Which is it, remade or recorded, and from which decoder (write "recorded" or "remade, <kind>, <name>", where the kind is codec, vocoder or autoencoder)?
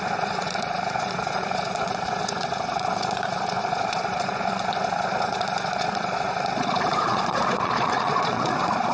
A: remade, vocoder, Vocos